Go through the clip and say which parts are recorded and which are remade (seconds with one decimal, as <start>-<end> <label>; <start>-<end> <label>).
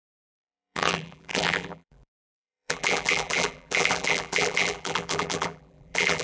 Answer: 0.0-6.2 remade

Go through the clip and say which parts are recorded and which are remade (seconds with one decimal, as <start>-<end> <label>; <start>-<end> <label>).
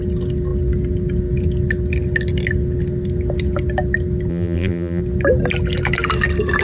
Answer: 0.0-4.3 recorded; 4.3-5.0 remade; 5.0-6.6 recorded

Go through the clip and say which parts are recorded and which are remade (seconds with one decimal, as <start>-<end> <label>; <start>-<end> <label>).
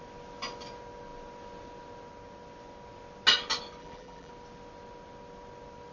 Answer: 0.0-3.8 recorded; 3.8-4.3 remade; 4.3-5.9 recorded